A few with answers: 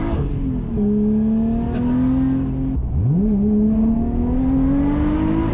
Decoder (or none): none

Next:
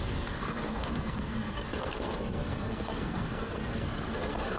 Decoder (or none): codec, SNAC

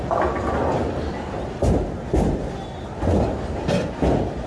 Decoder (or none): none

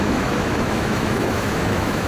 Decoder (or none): autoencoder, DAC-VAE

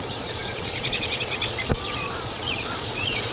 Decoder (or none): vocoder, Vocos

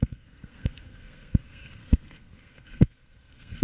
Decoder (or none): codec, SNAC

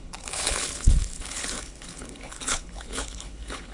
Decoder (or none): codec, HILCodec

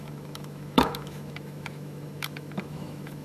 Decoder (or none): autoencoder, DAC-VAE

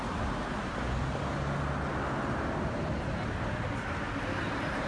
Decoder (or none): none